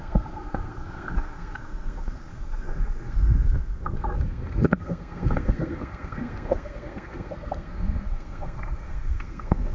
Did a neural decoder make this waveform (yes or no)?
yes